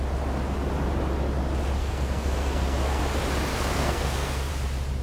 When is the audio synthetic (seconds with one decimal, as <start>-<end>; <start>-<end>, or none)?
1.8-3.0; 3.5-4.5

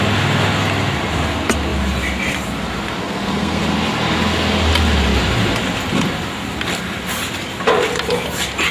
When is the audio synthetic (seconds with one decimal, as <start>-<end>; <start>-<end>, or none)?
3.0-3.6

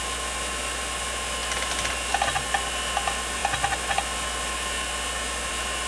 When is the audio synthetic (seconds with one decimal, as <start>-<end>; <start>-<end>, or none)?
none